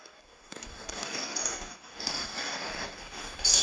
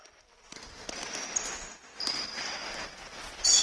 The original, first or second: second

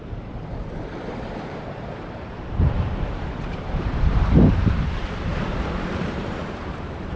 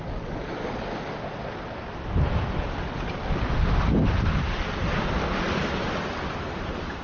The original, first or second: second